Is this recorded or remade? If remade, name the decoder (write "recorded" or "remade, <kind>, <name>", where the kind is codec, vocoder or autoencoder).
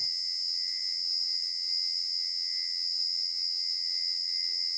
remade, vocoder, WaveNeXt